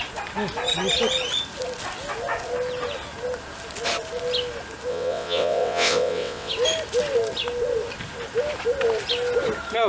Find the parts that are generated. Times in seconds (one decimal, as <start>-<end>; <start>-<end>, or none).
4.9-6.5